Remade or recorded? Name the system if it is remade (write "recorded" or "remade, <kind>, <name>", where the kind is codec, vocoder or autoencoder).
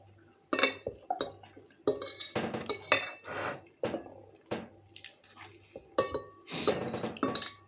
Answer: recorded